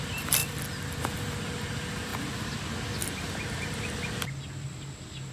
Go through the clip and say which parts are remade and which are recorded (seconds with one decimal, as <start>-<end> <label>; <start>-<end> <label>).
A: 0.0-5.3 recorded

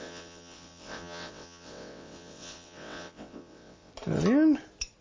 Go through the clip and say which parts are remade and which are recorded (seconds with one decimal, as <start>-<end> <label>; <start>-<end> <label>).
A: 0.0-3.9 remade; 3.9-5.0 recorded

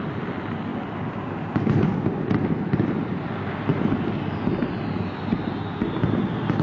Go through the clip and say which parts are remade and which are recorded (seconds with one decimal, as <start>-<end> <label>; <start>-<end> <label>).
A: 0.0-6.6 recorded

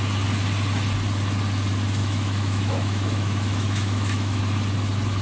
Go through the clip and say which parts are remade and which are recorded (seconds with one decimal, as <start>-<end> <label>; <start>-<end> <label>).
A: 0.0-2.0 recorded; 2.0-4.4 remade; 4.4-5.2 recorded

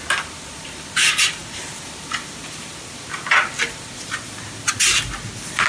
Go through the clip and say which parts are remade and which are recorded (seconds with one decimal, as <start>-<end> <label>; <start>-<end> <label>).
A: 0.0-5.7 recorded